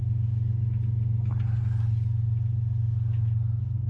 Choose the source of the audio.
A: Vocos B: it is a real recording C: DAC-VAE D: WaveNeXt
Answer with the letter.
B